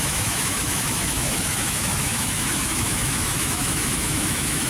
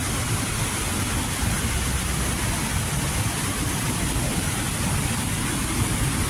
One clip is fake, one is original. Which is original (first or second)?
second